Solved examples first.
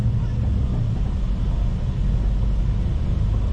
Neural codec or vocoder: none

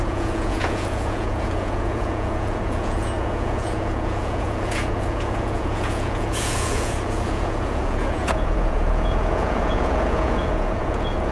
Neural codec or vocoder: vocoder, Vocos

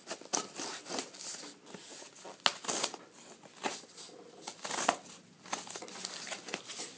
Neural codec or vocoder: none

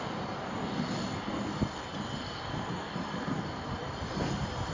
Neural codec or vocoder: none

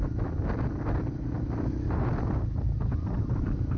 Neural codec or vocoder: none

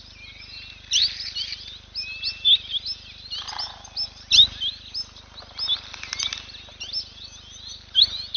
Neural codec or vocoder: none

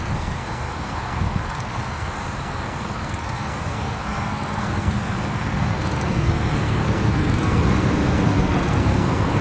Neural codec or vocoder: codec, SNAC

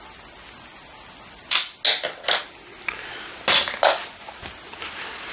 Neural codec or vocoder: none